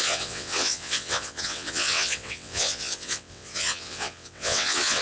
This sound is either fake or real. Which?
fake